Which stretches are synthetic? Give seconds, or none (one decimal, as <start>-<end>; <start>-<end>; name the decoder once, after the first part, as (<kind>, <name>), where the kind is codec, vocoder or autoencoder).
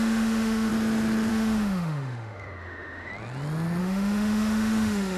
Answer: 0.0-0.7 (autoencoder, DAC-VAE); 1.3-3.1; 3.8-5.2